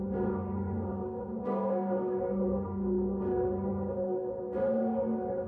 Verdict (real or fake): fake